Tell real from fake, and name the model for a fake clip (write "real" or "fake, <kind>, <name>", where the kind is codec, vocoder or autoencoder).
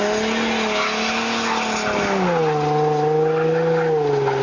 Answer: real